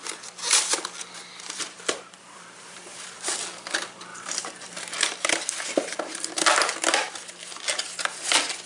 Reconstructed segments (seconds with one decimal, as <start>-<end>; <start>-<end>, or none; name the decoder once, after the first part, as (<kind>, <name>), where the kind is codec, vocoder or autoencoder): 1.3-2.8 (vocoder, BigVGAN v2); 4.1-7.1